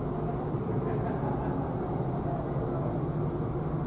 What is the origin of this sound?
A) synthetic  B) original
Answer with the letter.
B